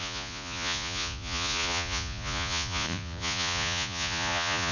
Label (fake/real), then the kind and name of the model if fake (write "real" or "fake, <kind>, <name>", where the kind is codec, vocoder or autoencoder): fake, vocoder, Vocos